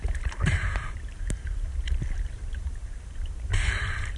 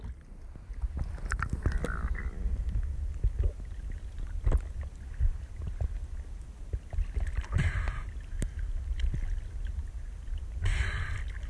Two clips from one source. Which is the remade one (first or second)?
first